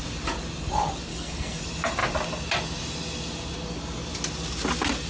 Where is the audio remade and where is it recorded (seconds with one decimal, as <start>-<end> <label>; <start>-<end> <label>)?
0.0-1.1 recorded; 1.1-1.6 remade; 1.6-5.1 recorded